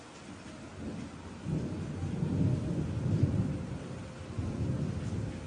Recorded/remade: recorded